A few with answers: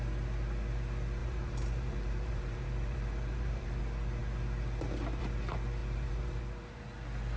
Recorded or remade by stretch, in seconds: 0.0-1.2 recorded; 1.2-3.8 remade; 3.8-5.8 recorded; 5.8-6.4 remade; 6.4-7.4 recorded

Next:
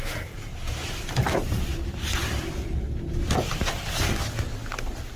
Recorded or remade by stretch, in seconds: 0.0-0.8 recorded; 0.8-3.9 remade; 3.9-5.2 recorded

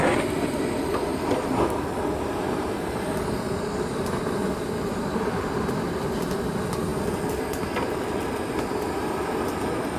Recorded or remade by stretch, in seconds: 0.0-1.1 recorded; 1.1-4.2 remade; 4.2-5.1 recorded; 5.1-6.1 remade; 6.1-10.0 recorded

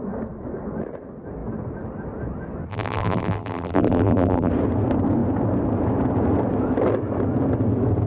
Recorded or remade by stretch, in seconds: 0.0-2.7 recorded; 2.7-4.5 remade; 4.5-8.1 recorded

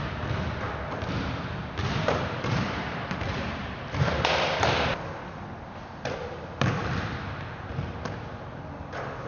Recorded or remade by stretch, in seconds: 0.0-1.5 recorded; 1.5-4.9 remade; 4.9-7.7 recorded; 7.7-8.5 remade; 8.5-9.3 recorded